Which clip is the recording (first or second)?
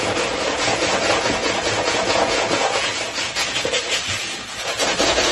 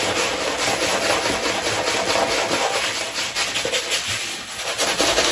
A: second